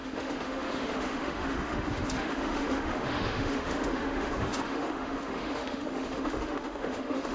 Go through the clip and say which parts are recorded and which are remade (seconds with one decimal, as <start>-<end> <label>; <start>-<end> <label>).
0.0-7.3 remade